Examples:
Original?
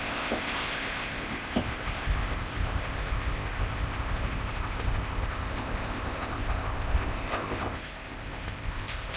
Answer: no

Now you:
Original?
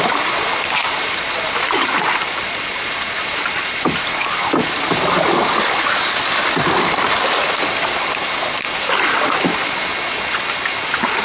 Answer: yes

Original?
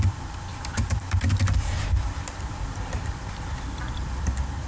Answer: no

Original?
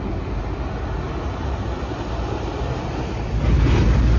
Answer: yes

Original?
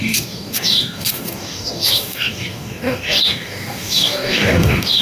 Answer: no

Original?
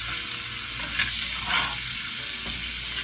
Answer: yes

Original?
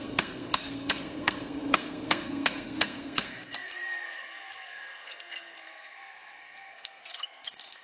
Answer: no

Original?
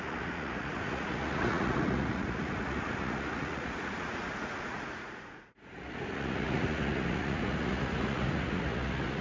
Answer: no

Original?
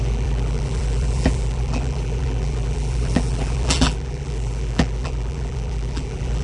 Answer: no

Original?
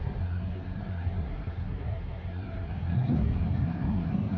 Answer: no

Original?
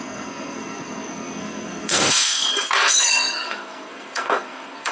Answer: no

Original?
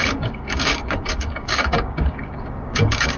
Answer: no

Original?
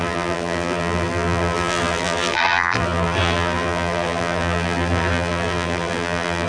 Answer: no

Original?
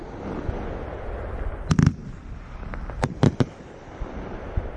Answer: yes